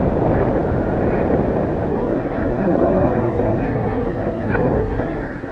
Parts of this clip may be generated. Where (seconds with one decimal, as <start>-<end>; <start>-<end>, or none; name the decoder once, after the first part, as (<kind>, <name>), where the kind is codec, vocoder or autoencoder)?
1.9-5.5 (codec, SNAC)